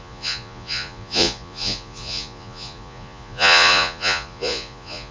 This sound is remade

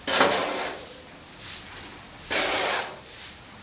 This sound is recorded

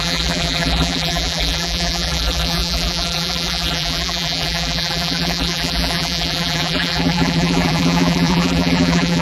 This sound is remade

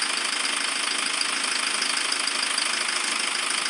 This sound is recorded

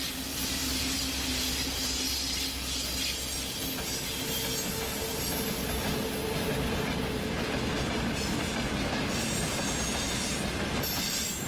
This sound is recorded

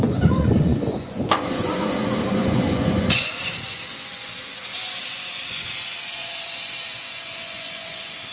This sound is remade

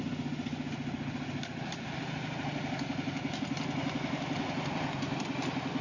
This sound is recorded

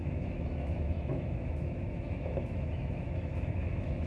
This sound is remade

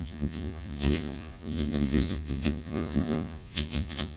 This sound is remade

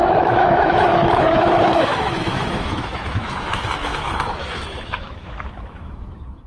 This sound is remade